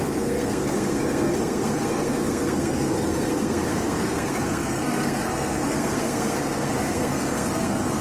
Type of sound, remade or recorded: remade